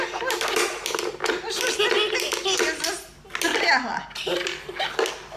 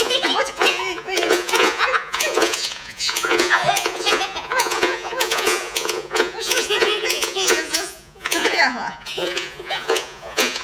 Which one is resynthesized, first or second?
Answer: second